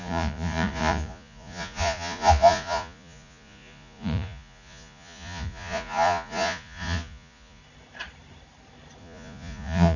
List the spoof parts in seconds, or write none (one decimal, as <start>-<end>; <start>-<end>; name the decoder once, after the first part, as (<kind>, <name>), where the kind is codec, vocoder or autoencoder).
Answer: 0.0-7.6 (vocoder, Vocos); 9.0-10.0